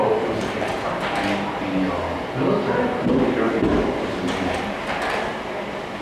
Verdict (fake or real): real